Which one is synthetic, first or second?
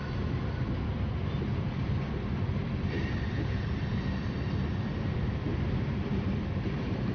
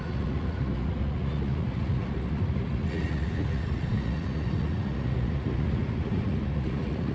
second